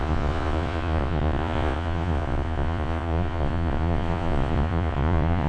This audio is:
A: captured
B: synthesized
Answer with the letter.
B